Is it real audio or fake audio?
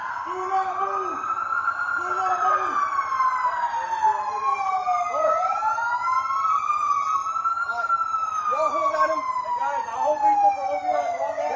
real